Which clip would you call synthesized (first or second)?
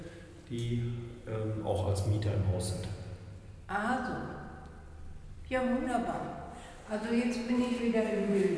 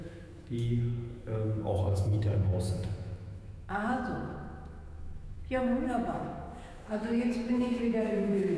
second